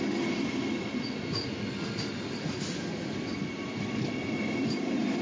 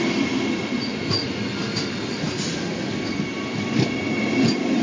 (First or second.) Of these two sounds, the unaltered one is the second